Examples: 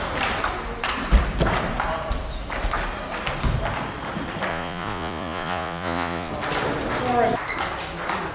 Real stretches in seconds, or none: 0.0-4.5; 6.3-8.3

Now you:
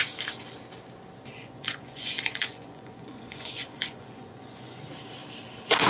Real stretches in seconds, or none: 0.0-1.3; 4.8-5.9

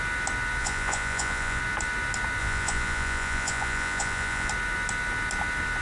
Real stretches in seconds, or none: 0.0-0.6; 1.6-2.4; 4.5-5.8

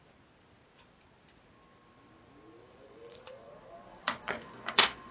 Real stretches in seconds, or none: 0.0-2.6; 3.5-3.9

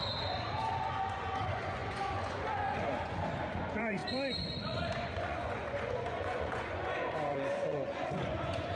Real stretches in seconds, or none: 0.0-0.7